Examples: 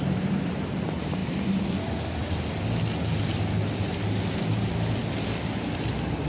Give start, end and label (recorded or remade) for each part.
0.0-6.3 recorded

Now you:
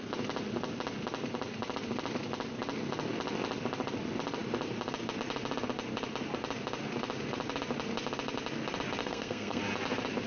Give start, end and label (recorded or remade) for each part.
0.0-9.0 recorded; 9.0-9.6 remade; 9.6-10.3 recorded

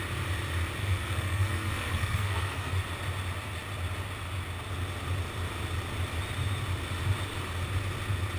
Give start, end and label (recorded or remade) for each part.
0.0-0.8 recorded; 0.8-2.7 remade; 2.7-8.4 recorded

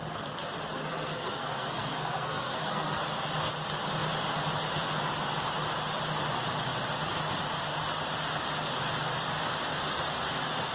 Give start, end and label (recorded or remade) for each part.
0.0-0.7 recorded; 0.7-3.0 remade; 3.0-10.7 recorded

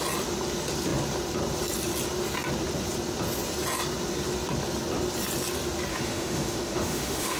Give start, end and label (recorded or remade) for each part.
0.0-5.9 recorded; 5.9-7.4 remade

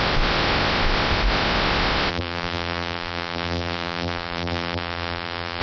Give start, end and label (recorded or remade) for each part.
0.0-2.1 recorded; 2.1-5.6 remade